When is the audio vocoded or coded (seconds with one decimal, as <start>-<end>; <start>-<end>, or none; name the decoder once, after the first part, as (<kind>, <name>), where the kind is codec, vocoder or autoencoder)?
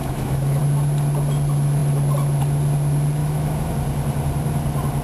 0.0-0.6 (autoencoder, DAC-VAE); 3.2-3.7